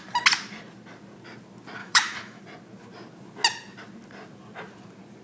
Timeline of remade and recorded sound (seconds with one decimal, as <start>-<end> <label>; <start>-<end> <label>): 0.0-1.8 recorded; 1.8-2.4 remade; 2.4-5.2 recorded